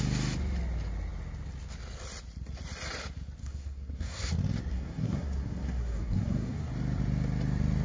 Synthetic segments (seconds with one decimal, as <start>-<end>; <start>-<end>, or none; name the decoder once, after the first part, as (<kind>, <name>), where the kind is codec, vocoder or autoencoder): 3.4-4.3 (codec, SNAC); 4.7-6.7